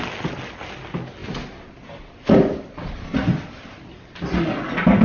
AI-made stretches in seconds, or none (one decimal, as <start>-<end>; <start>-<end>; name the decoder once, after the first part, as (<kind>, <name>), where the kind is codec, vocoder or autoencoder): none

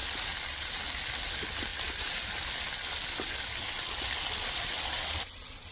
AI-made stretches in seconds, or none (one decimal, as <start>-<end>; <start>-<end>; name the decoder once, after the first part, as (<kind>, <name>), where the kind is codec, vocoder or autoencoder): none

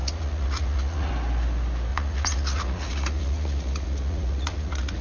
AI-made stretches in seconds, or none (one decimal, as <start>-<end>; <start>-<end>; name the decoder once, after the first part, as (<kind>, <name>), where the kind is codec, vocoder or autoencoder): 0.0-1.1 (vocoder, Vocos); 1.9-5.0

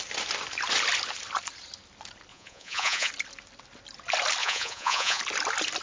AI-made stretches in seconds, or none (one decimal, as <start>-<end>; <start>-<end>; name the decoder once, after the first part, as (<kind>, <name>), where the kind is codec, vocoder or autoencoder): 2.3-3.1 (vocoder, Vocos); 4.4-5.2

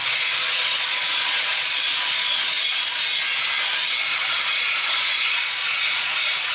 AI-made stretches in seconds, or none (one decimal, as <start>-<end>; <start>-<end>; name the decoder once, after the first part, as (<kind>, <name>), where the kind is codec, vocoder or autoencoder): 0.0-3.0 (vocoder, Vocos); 4.1-6.5

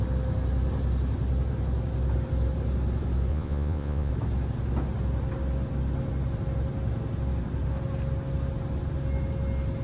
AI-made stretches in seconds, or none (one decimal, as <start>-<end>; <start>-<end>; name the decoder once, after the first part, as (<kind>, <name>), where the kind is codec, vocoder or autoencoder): 3.3-4.1 (vocoder, Vocos)